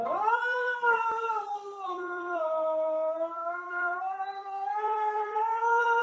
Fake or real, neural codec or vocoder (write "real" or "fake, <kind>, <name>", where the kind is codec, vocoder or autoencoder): fake, vocoder, BigVGAN v2